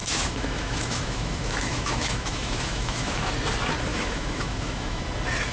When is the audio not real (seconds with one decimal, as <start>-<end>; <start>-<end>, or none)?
0.0-3.3; 3.9-5.0